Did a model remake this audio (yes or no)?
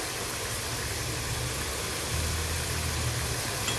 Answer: no